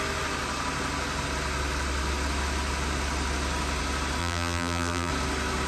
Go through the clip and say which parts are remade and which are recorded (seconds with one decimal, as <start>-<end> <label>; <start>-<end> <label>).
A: 0.0-4.2 recorded; 4.2-5.1 remade; 5.1-5.7 recorded